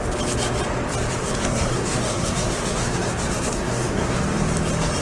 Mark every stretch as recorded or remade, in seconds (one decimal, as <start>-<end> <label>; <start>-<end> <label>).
0.0-1.2 recorded; 1.2-4.2 remade; 4.2-5.0 recorded